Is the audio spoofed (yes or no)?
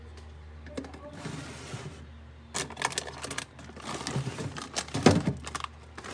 no